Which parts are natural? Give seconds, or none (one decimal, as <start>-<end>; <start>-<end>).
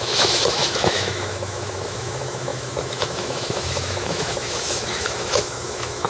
none